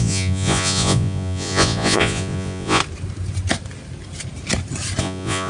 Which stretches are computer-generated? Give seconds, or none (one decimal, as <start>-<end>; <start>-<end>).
0.0-2.8; 5.0-5.5